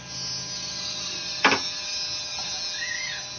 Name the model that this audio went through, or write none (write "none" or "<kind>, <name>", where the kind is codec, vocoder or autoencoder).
none